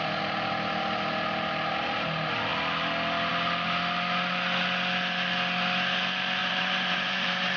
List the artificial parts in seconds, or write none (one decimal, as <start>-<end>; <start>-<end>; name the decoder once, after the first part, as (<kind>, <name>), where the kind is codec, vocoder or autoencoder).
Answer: 6.4-7.6 (vocoder, BigVGAN v2)